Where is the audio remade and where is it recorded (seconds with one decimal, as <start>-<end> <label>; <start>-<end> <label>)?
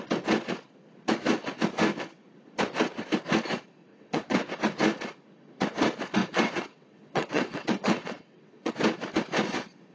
0.0-3.9 recorded; 3.9-4.5 remade; 4.5-6.2 recorded; 6.2-8.7 remade; 8.7-9.9 recorded